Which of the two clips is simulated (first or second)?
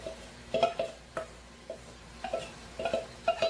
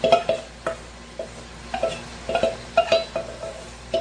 first